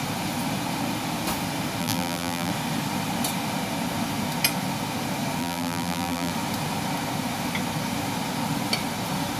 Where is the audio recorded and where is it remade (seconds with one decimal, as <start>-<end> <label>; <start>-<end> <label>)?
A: 0.0-1.8 recorded; 1.8-2.5 remade; 2.5-5.4 recorded; 5.4-6.3 remade; 6.3-9.4 recorded